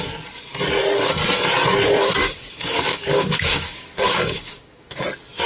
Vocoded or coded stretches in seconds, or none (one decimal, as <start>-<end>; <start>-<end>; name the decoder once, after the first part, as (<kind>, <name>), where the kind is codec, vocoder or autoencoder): 2.2-5.0 (codec, DAC)